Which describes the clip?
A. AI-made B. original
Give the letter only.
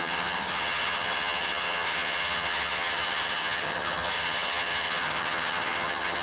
A